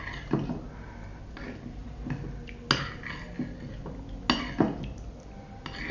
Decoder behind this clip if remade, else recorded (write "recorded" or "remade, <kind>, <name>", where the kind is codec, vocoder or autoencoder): recorded